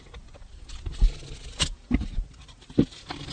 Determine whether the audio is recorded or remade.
recorded